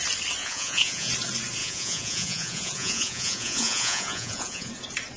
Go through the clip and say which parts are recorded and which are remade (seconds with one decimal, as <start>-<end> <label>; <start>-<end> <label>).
0.0-0.4 recorded; 0.4-1.1 remade; 1.1-1.6 recorded; 1.6-4.7 remade; 4.7-5.2 recorded